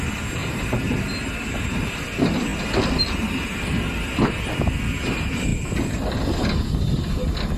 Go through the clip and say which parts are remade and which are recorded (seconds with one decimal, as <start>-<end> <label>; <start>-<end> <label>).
0.0-0.4 recorded; 0.4-0.9 remade; 0.9-7.6 recorded